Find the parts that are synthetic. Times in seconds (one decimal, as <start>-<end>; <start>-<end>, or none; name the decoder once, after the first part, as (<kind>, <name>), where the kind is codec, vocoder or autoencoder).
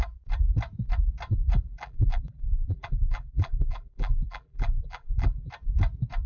1.7-5.5 (vocoder, BigVGAN v2)